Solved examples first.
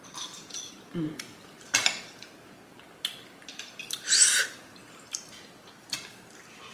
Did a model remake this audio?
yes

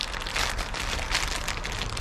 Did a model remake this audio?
no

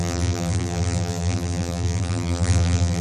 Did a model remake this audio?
yes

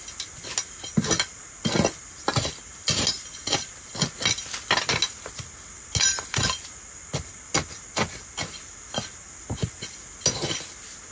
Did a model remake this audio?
no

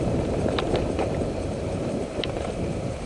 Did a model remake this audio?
yes